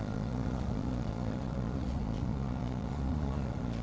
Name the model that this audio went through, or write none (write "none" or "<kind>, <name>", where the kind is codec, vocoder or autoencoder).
vocoder, Vocos